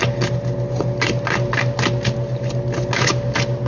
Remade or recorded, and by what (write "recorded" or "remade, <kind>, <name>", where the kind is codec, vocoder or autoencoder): recorded